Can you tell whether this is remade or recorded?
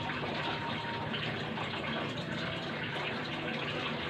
recorded